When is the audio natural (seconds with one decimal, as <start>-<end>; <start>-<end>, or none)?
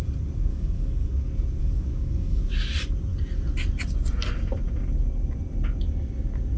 0.0-0.5; 1.1-1.6; 2.4-6.6